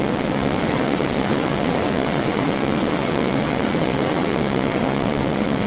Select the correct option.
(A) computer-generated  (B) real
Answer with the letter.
A